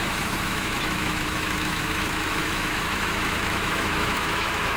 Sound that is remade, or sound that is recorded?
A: remade